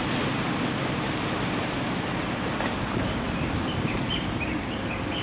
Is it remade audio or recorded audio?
recorded